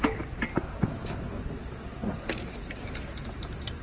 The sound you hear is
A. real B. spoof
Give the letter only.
A